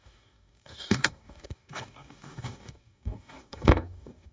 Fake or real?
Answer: fake